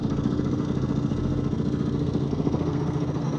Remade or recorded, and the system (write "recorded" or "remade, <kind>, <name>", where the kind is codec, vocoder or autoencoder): remade, codec, SNAC